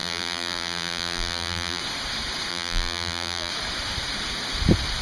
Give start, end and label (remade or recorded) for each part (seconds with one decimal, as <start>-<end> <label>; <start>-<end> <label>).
0.0-1.8 remade; 1.8-2.5 recorded; 2.5-3.5 remade; 3.5-5.0 recorded